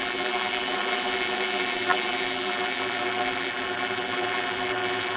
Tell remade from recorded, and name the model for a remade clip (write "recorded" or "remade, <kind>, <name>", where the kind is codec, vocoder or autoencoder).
remade, vocoder, BigVGAN v2